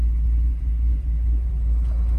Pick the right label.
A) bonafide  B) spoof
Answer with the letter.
A